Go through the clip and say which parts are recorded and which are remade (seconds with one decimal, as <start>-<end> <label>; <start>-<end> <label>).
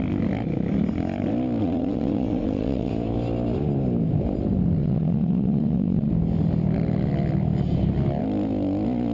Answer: 0.0-1.6 recorded; 1.6-2.9 remade; 2.9-4.8 recorded; 4.8-6.1 remade; 6.1-9.1 recorded